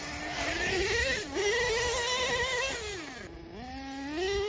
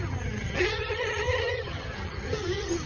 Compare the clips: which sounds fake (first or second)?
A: second